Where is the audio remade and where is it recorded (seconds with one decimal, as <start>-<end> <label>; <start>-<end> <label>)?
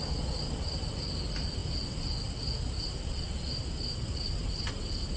0.0-5.2 recorded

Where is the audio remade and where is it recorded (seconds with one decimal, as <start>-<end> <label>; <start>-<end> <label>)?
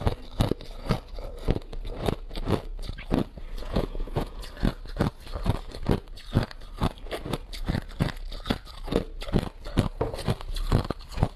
0.0-3.6 recorded; 3.6-4.4 remade; 4.4-11.4 recorded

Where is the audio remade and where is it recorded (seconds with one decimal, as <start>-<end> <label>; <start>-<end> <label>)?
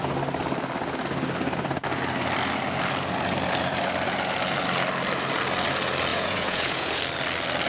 0.0-6.1 recorded; 6.1-7.0 remade; 7.0-7.7 recorded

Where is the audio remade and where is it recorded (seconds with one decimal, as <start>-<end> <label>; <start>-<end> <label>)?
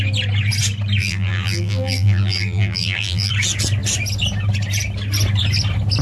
0.0-1.0 recorded; 1.0-3.3 remade; 3.3-6.0 recorded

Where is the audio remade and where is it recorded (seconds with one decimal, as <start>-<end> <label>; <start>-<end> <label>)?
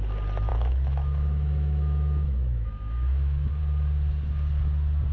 0.0-0.5 recorded; 0.5-3.6 remade; 3.6-5.1 recorded